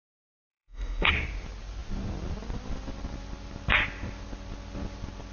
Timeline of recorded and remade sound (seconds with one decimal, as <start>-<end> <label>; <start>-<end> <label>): 0.0-0.5 recorded; 0.5-1.1 remade; 1.1-5.3 recorded